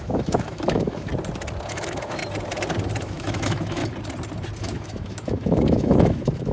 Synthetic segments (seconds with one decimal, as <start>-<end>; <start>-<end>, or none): 0.0-1.1; 1.7-2.2; 3.0-3.8; 4.6-6.5